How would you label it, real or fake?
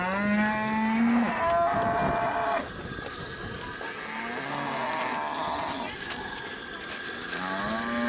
real